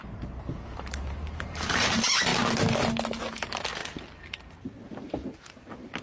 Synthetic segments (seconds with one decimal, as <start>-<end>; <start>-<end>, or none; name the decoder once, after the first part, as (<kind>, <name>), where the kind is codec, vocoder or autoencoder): 0.0-2.3 (vocoder, BigVGAN v2); 3.2-3.8; 4.6-6.0